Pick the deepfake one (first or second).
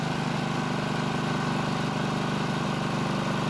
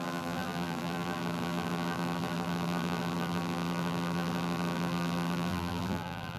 second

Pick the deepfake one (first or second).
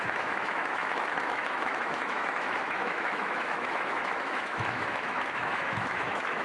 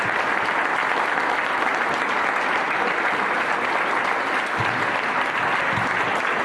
first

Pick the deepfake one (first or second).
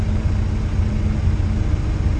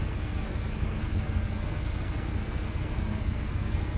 second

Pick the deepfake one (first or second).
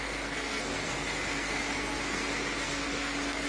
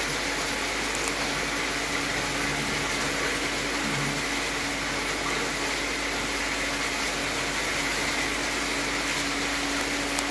first